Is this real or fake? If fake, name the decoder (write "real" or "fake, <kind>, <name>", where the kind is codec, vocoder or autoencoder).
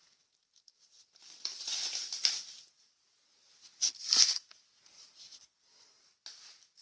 real